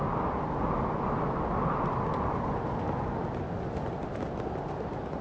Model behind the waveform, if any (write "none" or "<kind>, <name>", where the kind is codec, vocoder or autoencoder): none